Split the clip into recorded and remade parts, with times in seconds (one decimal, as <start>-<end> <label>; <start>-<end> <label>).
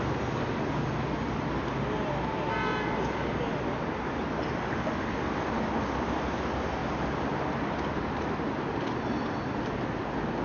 0.0-10.4 recorded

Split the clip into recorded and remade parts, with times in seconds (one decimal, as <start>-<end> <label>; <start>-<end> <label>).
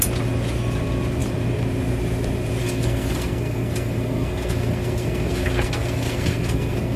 0.0-2.6 recorded; 2.6-7.0 remade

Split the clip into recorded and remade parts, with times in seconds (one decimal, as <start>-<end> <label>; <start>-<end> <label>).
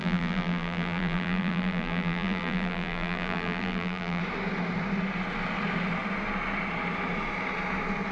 0.0-4.2 remade; 4.2-8.1 recorded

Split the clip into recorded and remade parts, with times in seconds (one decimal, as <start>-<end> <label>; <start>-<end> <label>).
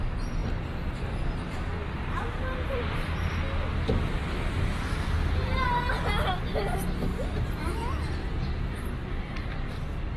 0.0-0.4 recorded; 0.4-3.4 remade; 3.4-4.2 recorded; 4.2-6.3 remade; 6.3-7.1 recorded; 7.1-8.1 remade; 8.1-10.2 recorded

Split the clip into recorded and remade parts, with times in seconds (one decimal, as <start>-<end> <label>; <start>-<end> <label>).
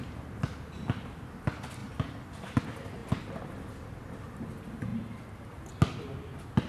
0.0-6.7 recorded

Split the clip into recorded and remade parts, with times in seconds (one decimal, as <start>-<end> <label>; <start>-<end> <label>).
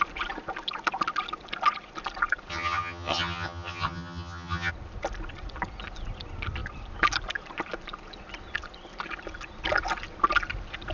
0.0-2.5 recorded; 2.5-4.7 remade; 4.7-10.9 recorded